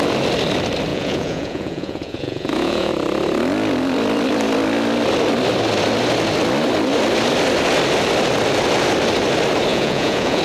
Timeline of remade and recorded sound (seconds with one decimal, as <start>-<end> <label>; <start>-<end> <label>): 0.0-0.9 recorded; 0.9-2.9 remade; 2.9-9.7 recorded; 9.7-10.4 remade